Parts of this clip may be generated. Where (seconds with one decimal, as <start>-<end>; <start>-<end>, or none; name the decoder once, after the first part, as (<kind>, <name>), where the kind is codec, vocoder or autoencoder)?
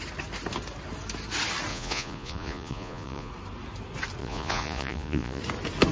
1.7-3.3 (vocoder, Vocos); 4.2-5.4